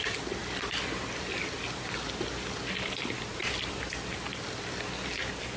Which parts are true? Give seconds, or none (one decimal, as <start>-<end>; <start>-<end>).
0.0-5.6